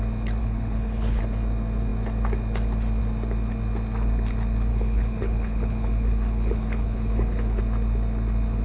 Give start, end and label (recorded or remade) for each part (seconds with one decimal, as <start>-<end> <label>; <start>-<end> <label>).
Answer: 0.0-0.4 recorded; 0.4-1.2 remade; 1.2-4.7 recorded; 4.7-7.6 remade; 7.6-8.6 recorded